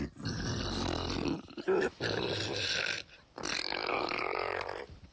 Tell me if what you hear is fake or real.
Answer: real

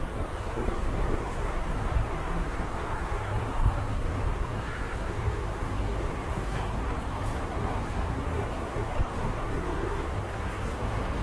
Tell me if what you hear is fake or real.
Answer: fake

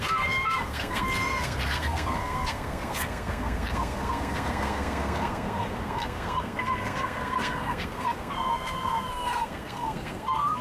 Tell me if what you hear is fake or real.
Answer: fake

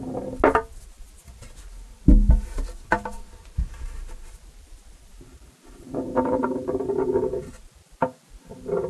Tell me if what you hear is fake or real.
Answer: real